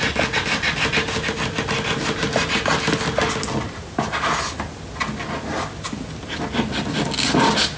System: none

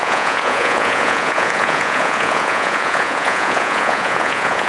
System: vocoder, Vocos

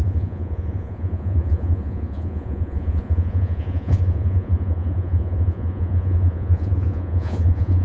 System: vocoder, Vocos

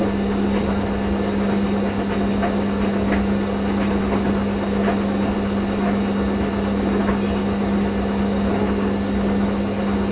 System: none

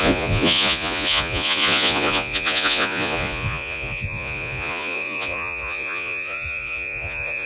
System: vocoder, Vocos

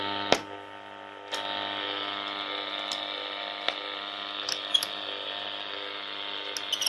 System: none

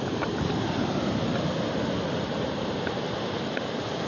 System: none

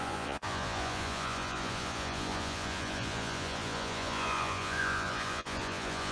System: vocoder, Vocos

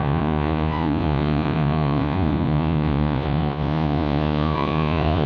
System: vocoder, Vocos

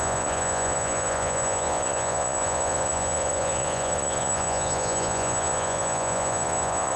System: vocoder, Vocos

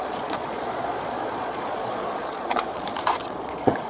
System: vocoder, Vocos